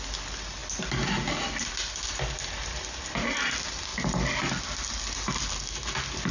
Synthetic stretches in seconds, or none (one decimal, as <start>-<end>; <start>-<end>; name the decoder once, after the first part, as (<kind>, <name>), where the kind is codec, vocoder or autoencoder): none